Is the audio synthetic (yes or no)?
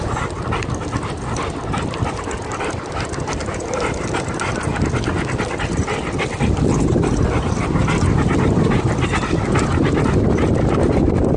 no